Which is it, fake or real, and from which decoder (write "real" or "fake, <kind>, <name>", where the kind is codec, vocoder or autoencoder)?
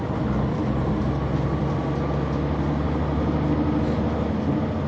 real